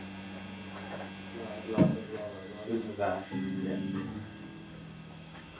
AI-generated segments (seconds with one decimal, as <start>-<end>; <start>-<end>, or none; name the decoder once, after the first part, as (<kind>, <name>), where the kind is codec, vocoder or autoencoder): 1.9-5.6 (codec, DAC)